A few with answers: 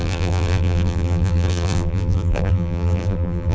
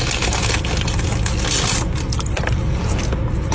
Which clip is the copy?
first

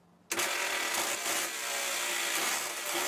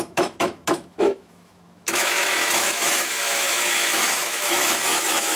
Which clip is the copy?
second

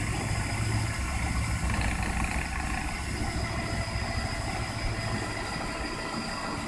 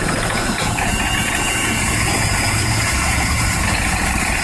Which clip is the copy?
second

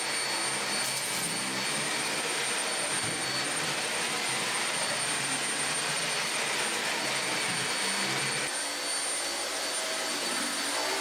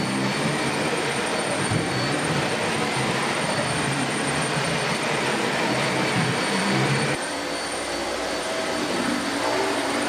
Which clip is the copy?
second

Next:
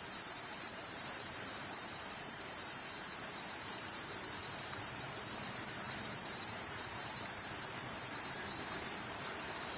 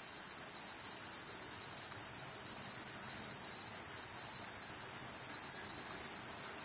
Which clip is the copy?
first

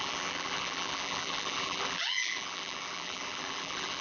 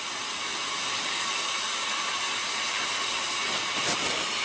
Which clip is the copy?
first